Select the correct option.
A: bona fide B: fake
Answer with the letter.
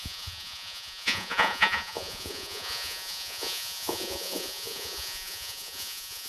B